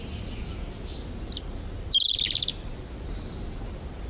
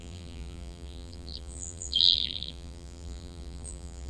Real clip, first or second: first